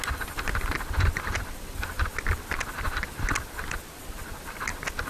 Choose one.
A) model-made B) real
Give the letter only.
B